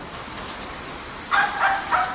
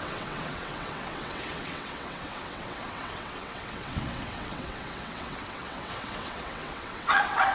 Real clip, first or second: first